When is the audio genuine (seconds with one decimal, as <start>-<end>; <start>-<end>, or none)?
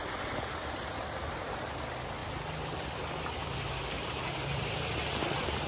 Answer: 0.0-5.7